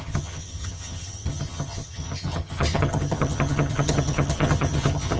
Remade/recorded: remade